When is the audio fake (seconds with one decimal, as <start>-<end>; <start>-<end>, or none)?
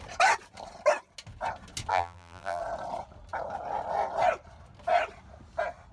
1.9-2.6